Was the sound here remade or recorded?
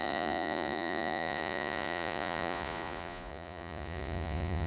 remade